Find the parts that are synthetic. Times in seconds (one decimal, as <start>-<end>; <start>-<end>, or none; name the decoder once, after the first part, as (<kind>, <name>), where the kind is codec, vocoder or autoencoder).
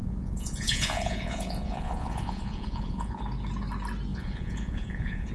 0.0-3.2 (vocoder, Vocos); 4.1-5.3